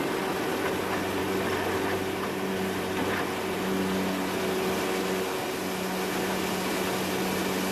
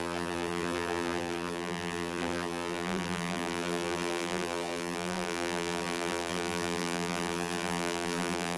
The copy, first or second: second